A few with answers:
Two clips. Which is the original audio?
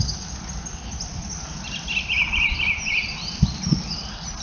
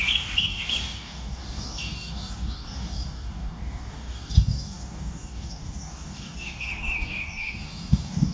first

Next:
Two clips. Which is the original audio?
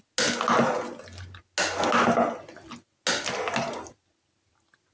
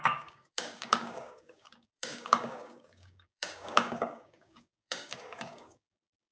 first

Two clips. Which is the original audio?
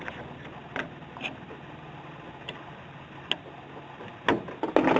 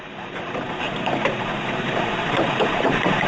first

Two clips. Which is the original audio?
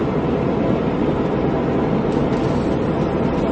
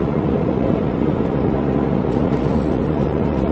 first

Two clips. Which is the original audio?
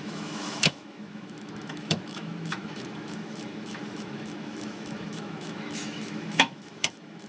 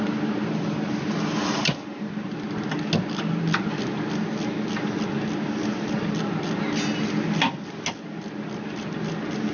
second